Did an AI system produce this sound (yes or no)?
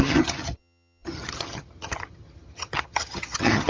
yes